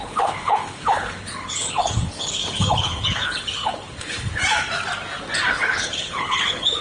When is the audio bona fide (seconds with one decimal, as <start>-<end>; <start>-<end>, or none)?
4.4-5.5